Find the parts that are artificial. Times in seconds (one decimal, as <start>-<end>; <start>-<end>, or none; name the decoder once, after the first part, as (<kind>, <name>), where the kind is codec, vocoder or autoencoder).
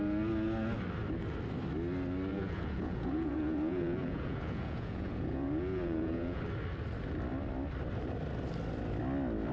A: 2.3-6.4 (vocoder, Vocos)